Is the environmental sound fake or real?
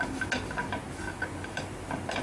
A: real